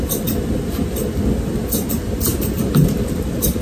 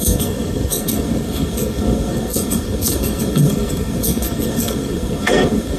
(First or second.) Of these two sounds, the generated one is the second